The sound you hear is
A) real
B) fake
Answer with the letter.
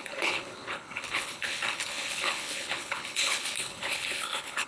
B